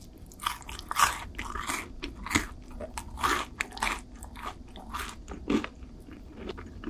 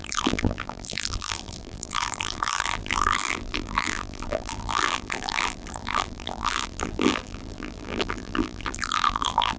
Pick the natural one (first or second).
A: first